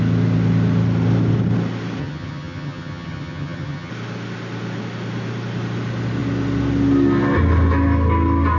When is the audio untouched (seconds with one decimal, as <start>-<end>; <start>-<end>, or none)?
0.0-2.0; 3.9-8.6